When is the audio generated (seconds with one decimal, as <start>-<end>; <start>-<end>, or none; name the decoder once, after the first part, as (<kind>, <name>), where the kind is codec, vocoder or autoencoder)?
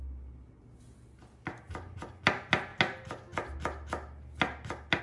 none